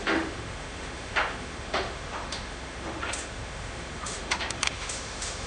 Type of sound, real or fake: fake